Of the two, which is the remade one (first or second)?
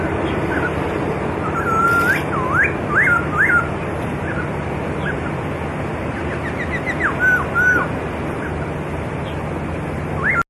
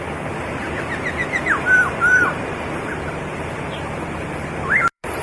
second